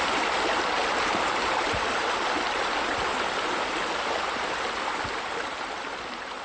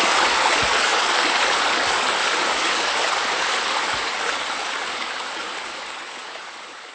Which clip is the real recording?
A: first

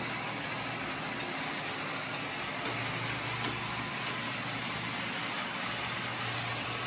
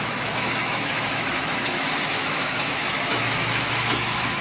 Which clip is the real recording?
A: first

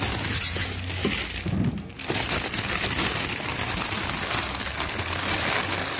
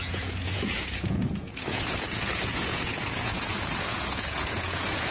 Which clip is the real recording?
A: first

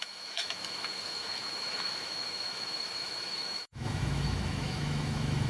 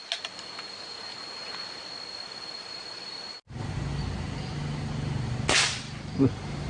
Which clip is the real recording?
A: second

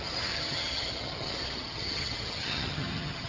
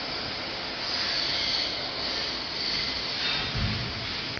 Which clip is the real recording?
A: second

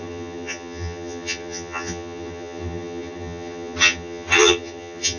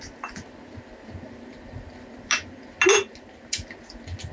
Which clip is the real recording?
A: second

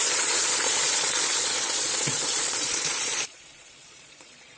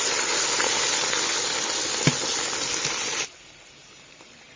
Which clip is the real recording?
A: second